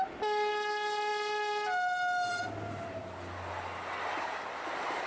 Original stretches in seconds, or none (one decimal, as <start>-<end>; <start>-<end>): 0.0-5.1